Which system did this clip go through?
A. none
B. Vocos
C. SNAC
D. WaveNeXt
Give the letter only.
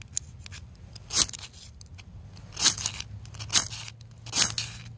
A